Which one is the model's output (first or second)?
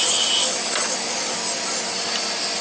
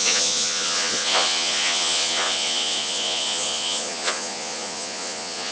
second